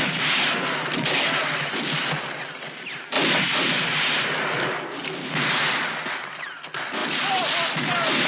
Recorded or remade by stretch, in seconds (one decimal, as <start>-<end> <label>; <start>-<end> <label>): 0.0-8.3 recorded